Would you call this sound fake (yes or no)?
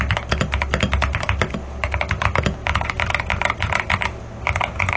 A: no